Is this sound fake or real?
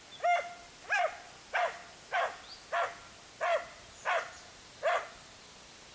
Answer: real